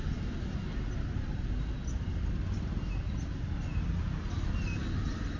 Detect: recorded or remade recorded